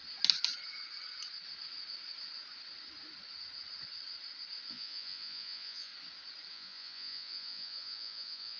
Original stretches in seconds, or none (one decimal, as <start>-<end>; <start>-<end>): 0.0-4.7; 5.9-6.5